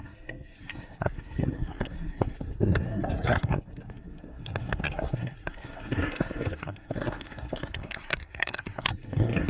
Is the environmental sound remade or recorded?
remade